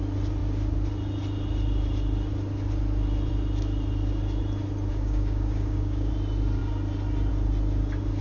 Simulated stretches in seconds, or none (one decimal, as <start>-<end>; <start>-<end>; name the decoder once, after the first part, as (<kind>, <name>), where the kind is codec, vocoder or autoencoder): 4.9-6.1 (codec, DAC)